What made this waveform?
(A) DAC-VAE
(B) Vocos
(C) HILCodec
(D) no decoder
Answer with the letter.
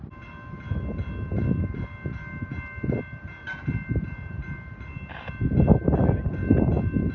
D